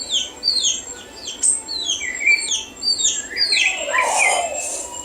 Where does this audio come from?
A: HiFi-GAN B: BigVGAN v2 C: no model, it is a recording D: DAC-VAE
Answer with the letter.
C